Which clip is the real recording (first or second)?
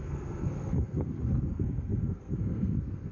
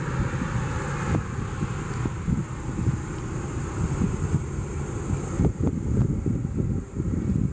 second